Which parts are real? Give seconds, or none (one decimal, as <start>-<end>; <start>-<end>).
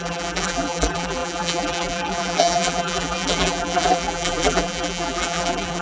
none